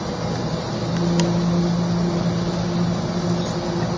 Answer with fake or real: real